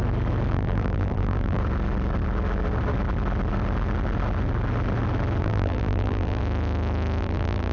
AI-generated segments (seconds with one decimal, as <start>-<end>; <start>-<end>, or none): 0.5-1.6; 5.4-6.4; 7.2-7.7